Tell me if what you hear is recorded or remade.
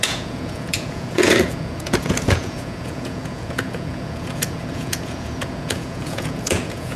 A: remade